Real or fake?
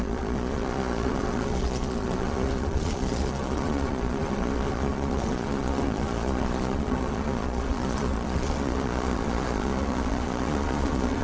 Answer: fake